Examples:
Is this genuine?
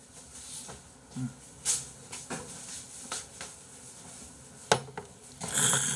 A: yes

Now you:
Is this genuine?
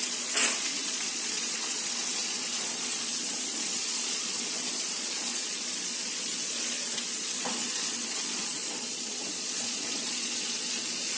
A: no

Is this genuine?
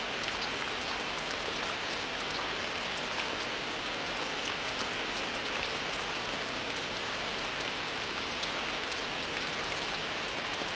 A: yes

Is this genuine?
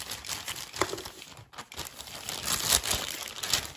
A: yes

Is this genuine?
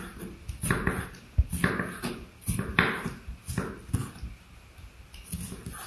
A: yes